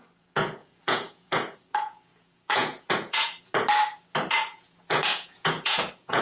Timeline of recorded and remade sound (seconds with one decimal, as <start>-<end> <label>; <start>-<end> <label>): 0.0-3.5 remade; 3.5-4.3 recorded; 4.3-6.2 remade